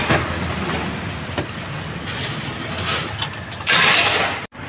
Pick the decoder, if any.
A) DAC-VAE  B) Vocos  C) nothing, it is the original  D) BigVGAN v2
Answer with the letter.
C